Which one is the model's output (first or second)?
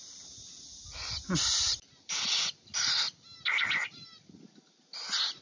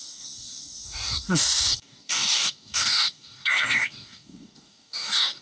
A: second